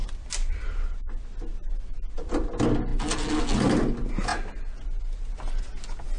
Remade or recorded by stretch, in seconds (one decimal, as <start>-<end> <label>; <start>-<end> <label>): 0.0-6.2 recorded

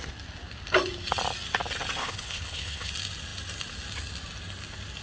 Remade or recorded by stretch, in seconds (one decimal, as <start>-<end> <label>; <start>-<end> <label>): 0.0-2.0 recorded; 2.0-2.9 remade; 2.9-5.0 recorded

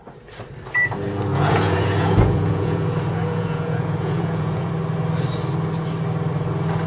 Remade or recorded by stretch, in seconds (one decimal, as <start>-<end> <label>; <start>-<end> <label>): 0.0-1.3 recorded; 1.3-4.7 remade; 4.7-6.9 recorded

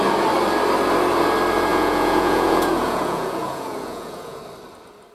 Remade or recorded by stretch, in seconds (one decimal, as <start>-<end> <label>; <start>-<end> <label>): 0.0-1.7 recorded; 1.7-4.4 remade; 4.4-5.1 recorded

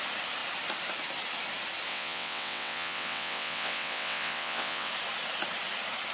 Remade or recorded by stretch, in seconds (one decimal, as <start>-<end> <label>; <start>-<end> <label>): 0.0-1.9 recorded; 1.9-4.9 remade; 4.9-6.1 recorded

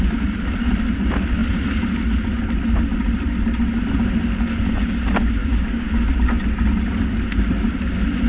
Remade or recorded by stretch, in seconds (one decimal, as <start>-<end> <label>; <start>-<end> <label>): 0.0-5.4 recorded; 5.4-6.1 remade; 6.1-8.3 recorded